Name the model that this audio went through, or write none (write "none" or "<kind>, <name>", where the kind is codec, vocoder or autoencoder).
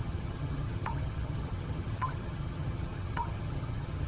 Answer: vocoder, HiFi-GAN